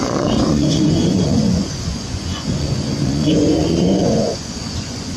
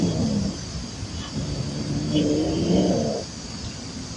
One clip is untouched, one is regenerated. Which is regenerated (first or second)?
first